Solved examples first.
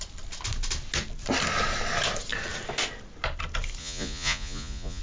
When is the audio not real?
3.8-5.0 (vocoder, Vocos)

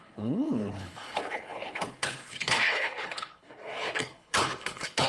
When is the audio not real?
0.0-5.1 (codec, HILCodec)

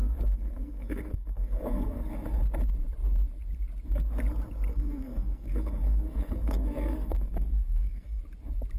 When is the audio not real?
0.0-2.1 (codec, SNAC); 4.7-8.2

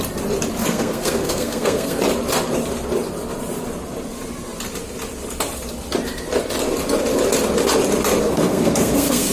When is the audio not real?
0.6-2.0 (codec, SNAC); 8.2-9.3

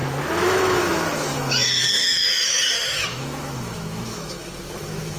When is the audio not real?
0.0-5.2 (autoencoder, DAC-VAE)

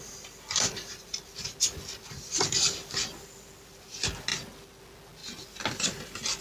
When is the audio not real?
4.3-4.8 (vocoder, BigVGAN v2)